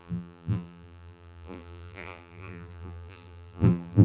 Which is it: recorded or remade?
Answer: remade